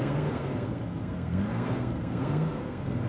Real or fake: fake